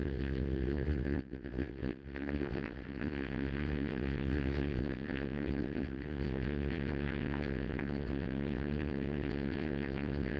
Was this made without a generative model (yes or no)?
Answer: no